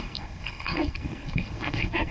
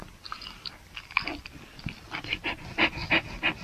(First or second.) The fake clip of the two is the first